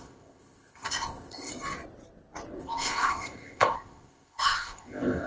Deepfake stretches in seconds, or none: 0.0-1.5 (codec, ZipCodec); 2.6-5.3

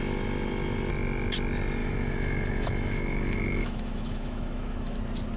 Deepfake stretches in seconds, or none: 1.8-5.0 (autoencoder, DAC-VAE)

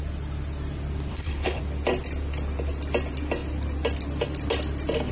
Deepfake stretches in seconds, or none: 1.1-1.6 (codec, HILCodec)